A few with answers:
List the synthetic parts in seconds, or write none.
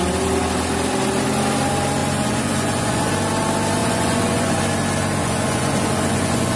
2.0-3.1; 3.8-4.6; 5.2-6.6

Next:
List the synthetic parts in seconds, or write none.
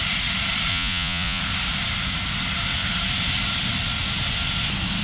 0.7-1.4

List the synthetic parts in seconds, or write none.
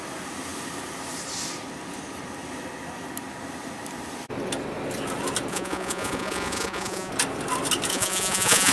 5.5-7.1; 7.9-8.7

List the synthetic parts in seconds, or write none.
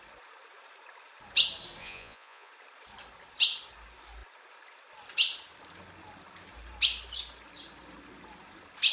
1.8-2.5